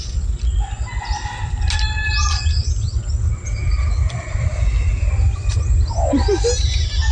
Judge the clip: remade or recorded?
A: recorded